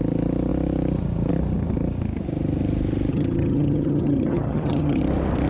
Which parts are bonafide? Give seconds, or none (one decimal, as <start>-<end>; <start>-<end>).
0.0-3.1; 5.0-5.5